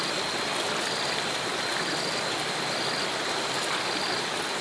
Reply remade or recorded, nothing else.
recorded